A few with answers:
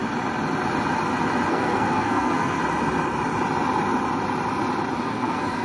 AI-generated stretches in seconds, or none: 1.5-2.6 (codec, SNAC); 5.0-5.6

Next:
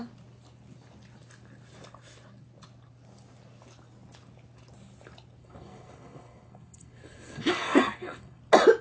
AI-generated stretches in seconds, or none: 5.4-8.4 (codec, SNAC)